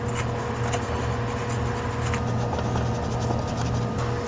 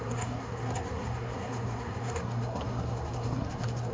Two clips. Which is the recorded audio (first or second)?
first